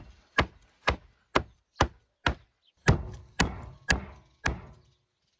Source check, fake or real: real